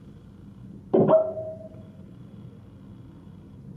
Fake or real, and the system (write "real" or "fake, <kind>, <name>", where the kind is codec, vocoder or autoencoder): real